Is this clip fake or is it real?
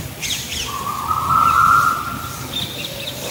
real